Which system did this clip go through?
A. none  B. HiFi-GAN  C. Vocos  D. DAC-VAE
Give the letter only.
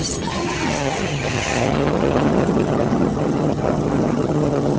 B